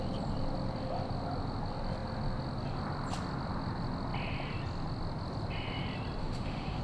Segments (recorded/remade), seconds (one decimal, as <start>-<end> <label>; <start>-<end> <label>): 0.0-6.2 recorded; 6.2-6.8 remade